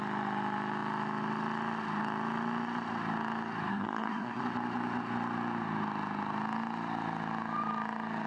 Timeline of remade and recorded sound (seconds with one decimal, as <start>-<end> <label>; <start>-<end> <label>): 0.0-3.7 recorded; 3.7-4.4 remade; 4.4-8.3 recorded